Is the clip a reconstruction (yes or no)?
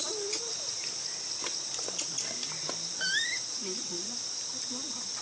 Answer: no